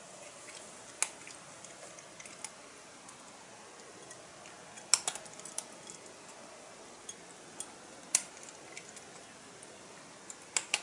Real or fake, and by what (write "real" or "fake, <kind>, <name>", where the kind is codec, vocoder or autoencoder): real